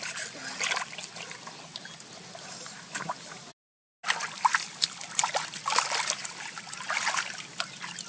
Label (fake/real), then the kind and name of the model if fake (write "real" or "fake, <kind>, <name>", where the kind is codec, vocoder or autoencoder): real